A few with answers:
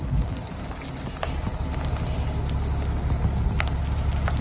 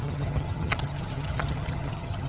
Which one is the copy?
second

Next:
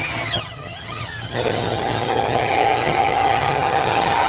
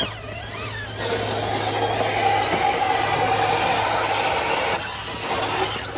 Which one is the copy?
first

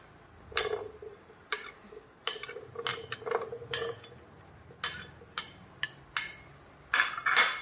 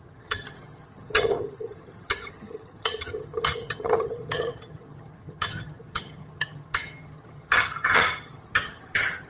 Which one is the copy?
second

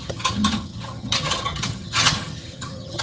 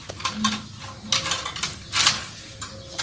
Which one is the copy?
first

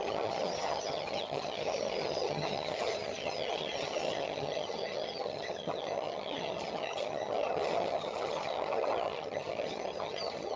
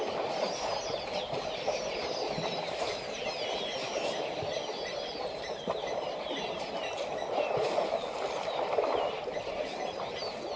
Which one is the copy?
first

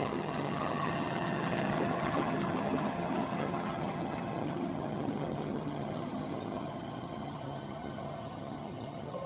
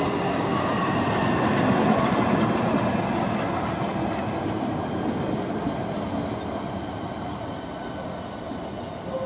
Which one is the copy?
first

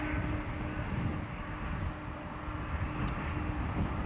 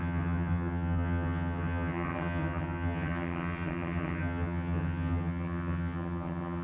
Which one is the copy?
second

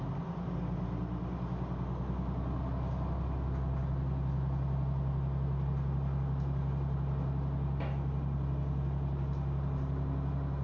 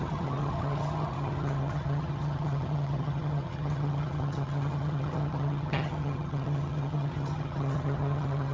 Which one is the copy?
second